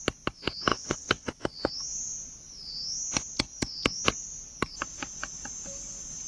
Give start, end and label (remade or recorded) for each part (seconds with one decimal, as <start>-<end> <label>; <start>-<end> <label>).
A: 0.0-0.7 recorded; 0.7-1.3 remade; 1.3-6.3 recorded